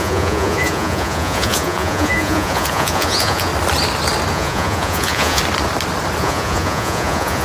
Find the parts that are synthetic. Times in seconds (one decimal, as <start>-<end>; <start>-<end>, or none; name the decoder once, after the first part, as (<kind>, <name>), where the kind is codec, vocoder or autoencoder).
0.0-3.5 (vocoder, Vocos); 4.3-5.4; 6.2-7.4